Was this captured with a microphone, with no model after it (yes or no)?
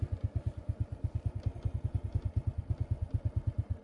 yes